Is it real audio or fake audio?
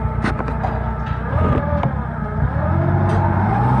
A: real